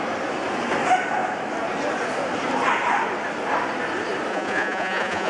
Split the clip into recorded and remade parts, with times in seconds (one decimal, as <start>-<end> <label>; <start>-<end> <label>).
0.0-4.3 recorded; 4.3-5.3 remade